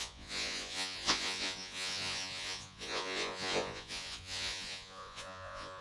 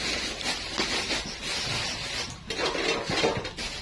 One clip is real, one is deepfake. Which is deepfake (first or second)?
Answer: first